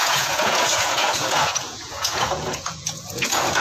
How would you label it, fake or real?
fake